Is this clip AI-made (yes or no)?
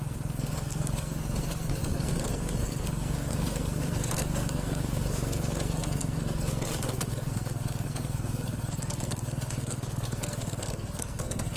yes